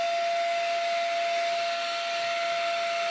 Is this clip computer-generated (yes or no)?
no